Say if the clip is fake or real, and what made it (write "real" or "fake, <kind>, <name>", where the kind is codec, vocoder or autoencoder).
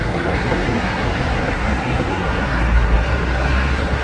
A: fake, codec, SNAC